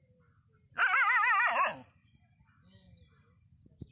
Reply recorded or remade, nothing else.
recorded